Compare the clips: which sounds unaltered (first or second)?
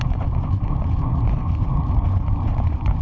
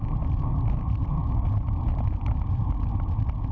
second